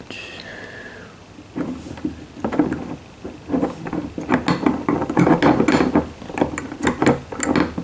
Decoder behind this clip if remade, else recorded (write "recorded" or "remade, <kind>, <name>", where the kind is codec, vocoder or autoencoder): recorded